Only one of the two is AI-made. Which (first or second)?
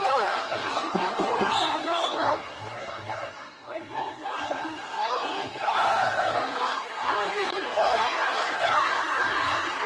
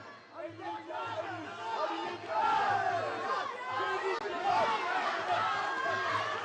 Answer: first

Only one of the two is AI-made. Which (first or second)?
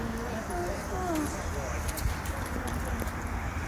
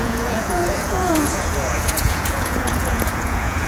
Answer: second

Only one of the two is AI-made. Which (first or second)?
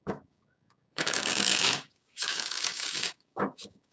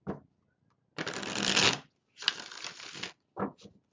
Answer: first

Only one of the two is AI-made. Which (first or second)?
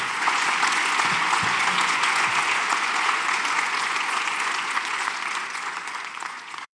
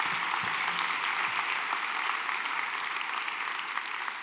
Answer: first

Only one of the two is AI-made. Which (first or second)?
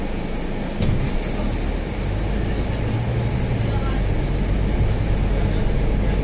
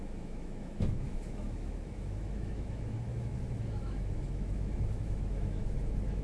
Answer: second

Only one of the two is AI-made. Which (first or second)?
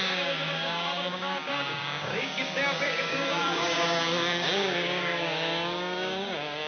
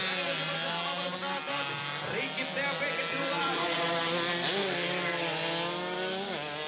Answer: first